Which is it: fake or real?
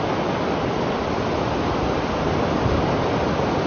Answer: real